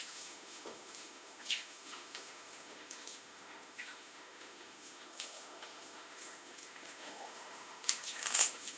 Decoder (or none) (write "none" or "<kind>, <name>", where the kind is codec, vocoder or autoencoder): autoencoder, DAC-VAE